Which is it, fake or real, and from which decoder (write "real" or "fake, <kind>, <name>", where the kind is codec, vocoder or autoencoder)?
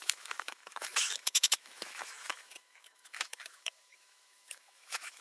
fake, autoencoder, DAC-VAE